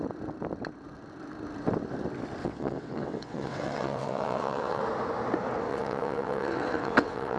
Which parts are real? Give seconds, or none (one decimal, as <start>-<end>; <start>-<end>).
0.0-2.4; 4.8-5.7